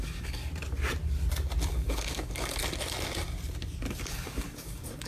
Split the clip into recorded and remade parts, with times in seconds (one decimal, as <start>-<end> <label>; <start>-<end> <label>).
0.0-0.5 remade; 0.5-1.7 recorded; 1.7-2.6 remade; 2.6-4.1 recorded; 4.1-5.1 remade